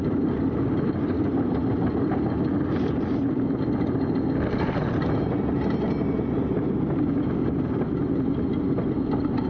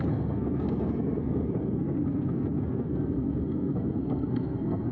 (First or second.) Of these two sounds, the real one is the first